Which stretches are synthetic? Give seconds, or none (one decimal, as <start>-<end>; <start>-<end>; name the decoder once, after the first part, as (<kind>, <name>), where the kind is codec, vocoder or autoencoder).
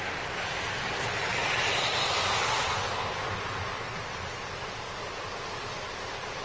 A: none